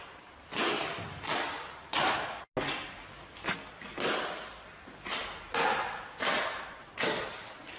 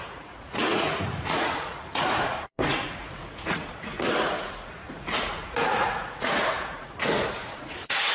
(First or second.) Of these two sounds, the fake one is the second